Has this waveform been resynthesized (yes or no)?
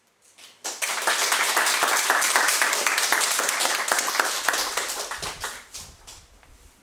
yes